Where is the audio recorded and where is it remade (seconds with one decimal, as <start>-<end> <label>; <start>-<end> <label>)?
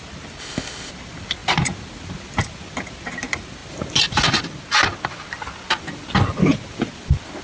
0.0-0.4 recorded; 0.4-0.9 remade; 0.9-7.4 recorded